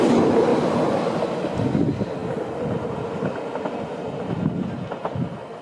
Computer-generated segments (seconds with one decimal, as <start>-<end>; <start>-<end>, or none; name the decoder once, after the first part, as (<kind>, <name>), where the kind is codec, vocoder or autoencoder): 0.5-1.2 (vocoder, BigVGAN v2)